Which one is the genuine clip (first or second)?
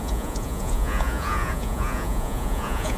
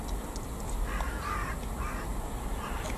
second